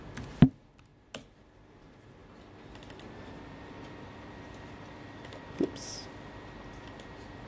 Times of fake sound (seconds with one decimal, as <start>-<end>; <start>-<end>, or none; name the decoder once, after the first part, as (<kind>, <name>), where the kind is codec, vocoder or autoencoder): none